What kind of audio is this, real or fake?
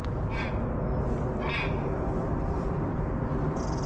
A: real